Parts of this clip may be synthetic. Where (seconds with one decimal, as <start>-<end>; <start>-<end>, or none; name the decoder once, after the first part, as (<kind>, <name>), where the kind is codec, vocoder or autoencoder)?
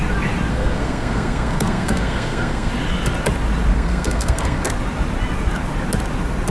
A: 0.5-2.7 (codec, SNAC); 3.7-4.7